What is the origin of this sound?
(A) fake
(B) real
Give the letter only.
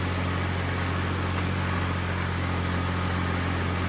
B